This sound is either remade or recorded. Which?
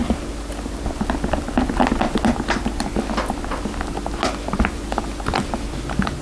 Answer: recorded